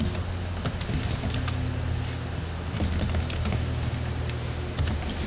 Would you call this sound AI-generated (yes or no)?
no